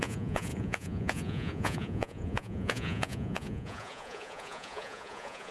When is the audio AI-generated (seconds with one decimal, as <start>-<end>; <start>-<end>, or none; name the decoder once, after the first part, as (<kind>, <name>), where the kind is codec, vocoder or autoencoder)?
0.0-5.5 (vocoder, Vocos)